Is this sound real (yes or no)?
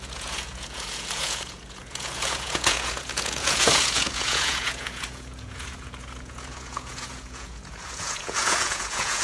no